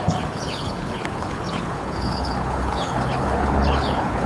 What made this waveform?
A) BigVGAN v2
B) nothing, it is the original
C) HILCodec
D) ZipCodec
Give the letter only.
C